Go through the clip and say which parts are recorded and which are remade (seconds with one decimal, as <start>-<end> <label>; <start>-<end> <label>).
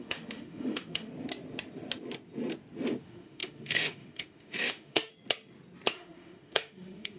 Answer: 0.0-1.1 remade; 1.1-3.0 recorded; 3.0-5.1 remade; 5.1-5.9 recorded; 5.9-7.2 remade